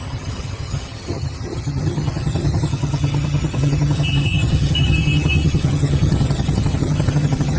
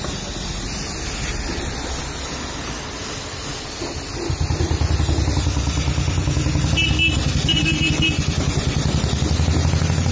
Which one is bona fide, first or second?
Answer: second